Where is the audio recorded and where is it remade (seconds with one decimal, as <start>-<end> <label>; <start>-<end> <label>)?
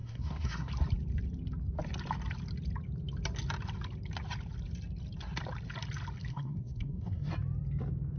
0.0-0.7 remade; 0.7-6.3 recorded; 6.3-7.3 remade; 7.3-8.2 recorded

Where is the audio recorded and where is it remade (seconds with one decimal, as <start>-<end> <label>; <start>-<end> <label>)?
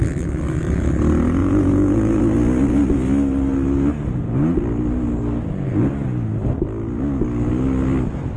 0.0-1.4 recorded; 1.4-2.2 remade; 2.2-8.4 recorded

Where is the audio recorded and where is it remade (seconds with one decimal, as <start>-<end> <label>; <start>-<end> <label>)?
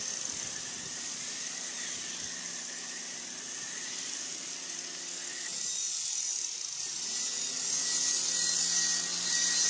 0.0-0.9 recorded; 0.9-4.3 remade; 4.3-9.7 recorded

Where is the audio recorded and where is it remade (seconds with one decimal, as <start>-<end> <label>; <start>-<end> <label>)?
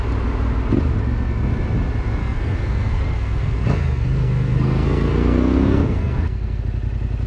0.0-2.2 recorded; 2.2-6.6 remade; 6.6-7.3 recorded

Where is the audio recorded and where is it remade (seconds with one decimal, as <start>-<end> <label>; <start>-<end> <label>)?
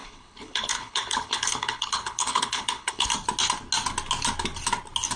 0.0-3.1 remade; 3.1-5.2 recorded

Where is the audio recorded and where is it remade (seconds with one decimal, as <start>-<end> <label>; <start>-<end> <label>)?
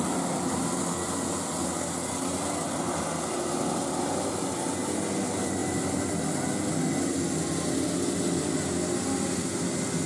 0.0-10.1 recorded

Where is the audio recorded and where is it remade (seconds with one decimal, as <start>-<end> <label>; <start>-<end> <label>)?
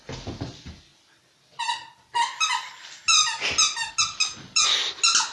0.0-5.3 recorded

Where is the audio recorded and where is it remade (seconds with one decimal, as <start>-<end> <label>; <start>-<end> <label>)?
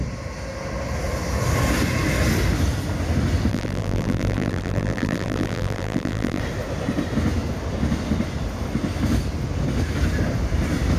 0.0-3.5 recorded; 3.5-6.4 remade; 6.4-11.0 recorded